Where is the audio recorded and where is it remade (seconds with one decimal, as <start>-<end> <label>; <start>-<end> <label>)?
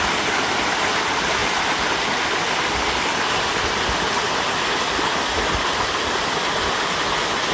0.0-1.4 recorded; 1.4-2.5 remade; 2.5-7.5 recorded